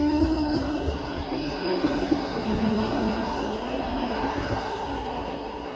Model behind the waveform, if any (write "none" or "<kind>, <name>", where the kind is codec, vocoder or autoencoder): codec, SNAC